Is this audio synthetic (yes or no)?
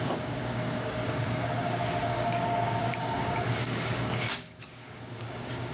yes